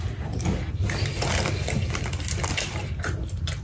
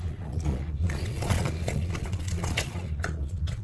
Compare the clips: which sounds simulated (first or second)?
second